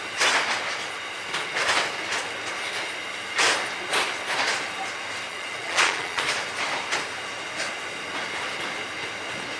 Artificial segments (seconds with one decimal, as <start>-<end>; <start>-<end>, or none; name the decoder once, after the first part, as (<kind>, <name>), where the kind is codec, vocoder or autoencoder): 5.3-6.2 (vocoder, Vocos)

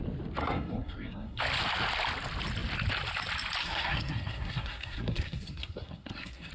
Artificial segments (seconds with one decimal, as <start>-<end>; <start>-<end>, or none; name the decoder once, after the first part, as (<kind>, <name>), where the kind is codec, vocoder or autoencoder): 0.4-1.4 (codec, SNAC); 3.6-6.5

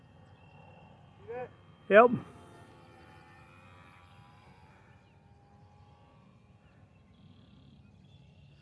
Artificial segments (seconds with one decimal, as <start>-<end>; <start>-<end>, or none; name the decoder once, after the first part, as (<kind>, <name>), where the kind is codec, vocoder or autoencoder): none